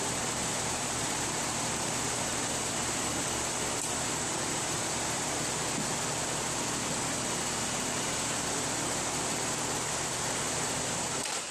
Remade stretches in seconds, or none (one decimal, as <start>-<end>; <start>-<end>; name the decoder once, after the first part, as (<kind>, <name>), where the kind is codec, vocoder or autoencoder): 0.0-3.1 (vocoder, BigVGAN v2); 3.9-5.6; 10.1-11.5